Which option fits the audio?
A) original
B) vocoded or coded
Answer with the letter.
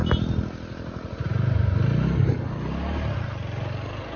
A